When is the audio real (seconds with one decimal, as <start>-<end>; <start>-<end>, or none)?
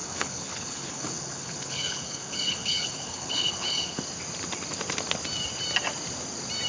4.0-6.7